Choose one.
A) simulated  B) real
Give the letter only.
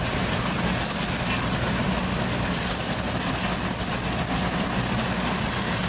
B